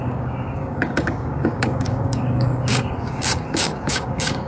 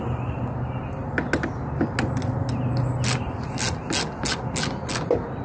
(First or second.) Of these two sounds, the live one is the second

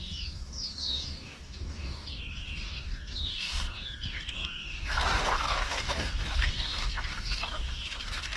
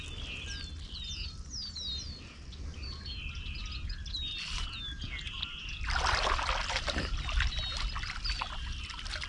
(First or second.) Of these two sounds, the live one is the second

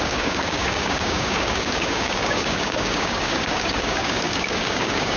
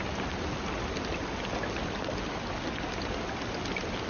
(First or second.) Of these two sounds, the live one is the second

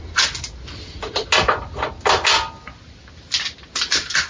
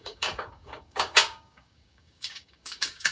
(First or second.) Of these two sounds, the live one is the first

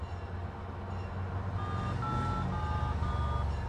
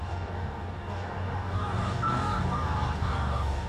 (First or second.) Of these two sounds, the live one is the first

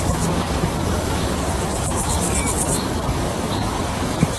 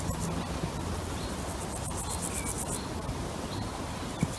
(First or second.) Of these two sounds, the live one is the second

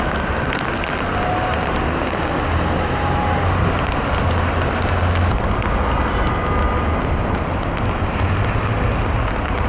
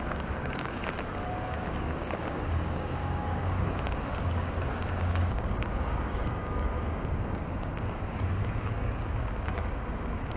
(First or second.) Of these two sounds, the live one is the first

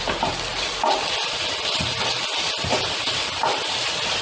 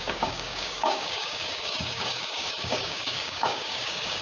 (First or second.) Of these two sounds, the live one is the first